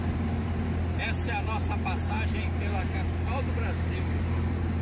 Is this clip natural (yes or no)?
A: yes